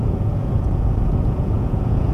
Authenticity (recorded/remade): remade